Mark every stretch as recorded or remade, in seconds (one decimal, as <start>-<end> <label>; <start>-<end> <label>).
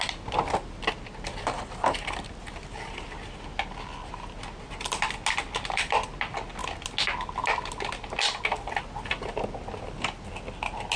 0.0-11.0 recorded